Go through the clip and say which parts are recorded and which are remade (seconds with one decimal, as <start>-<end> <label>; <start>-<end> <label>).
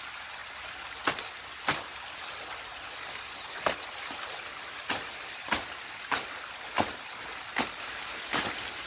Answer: 0.0-8.9 recorded